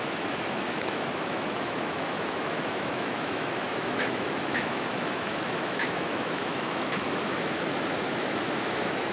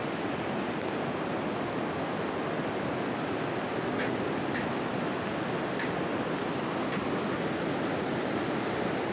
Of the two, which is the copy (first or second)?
first